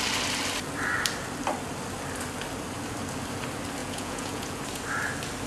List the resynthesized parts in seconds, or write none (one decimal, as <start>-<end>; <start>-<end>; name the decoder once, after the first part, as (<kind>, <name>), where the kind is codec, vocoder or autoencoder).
3.8-4.6 (vocoder, Vocos)